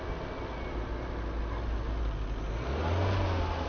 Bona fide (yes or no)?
yes